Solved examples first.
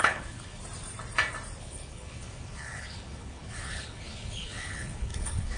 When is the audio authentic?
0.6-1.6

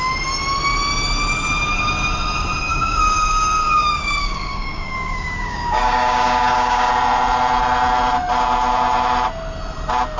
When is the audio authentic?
0.0-2.7; 6.9-10.2

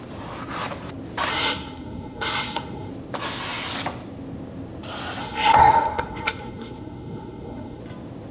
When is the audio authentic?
0.0-1.3; 2.9-5.2; 7.8-8.3

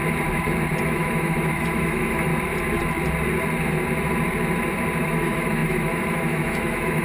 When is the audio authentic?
0.0-0.8; 2.3-5.0